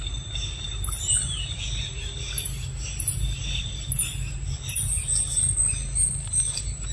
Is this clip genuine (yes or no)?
yes